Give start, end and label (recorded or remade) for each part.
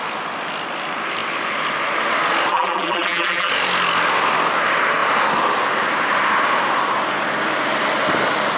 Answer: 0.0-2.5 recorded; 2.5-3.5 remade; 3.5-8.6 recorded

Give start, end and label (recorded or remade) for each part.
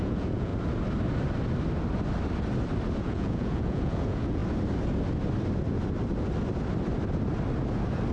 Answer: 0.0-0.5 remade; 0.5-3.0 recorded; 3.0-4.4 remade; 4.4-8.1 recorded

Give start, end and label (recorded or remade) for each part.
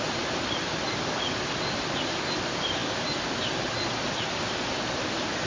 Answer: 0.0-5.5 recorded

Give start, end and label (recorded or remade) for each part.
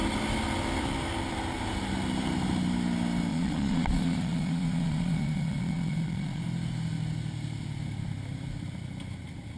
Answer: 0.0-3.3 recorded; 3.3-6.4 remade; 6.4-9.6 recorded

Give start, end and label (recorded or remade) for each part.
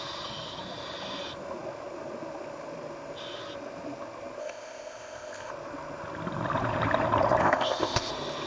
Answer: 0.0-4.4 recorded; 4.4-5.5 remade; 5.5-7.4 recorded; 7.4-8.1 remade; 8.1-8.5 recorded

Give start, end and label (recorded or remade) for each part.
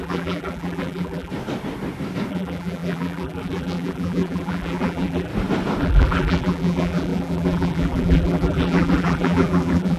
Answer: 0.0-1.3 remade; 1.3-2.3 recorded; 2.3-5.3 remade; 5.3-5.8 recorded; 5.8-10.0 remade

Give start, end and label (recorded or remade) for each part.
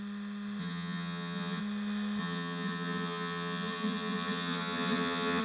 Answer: 0.0-0.6 recorded; 0.6-1.6 remade; 1.6-2.2 recorded; 2.2-5.4 remade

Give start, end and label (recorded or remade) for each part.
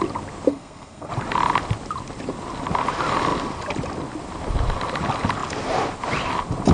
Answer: 0.0-0.5 recorded; 0.5-1.1 remade; 1.1-6.7 recorded